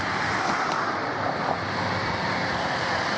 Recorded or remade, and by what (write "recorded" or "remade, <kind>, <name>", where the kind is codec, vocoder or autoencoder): recorded